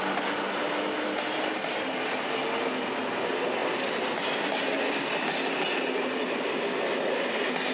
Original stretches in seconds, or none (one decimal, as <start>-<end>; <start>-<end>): 0.0-7.7